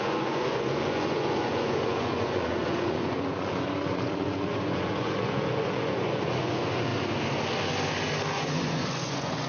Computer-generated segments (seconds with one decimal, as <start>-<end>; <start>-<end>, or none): 0.0-6.9; 8.3-9.5